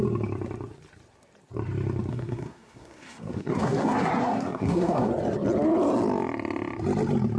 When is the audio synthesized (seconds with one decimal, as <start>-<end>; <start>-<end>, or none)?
2.1-5.1